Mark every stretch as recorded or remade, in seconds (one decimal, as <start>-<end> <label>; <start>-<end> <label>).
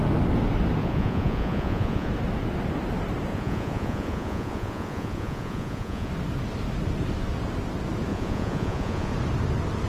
0.0-0.8 recorded; 0.8-2.1 remade; 2.1-3.3 recorded; 3.3-6.1 remade; 6.1-8.1 recorded; 8.1-9.1 remade; 9.1-9.9 recorded